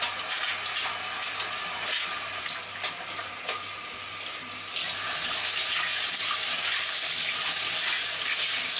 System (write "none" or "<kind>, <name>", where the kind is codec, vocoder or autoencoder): none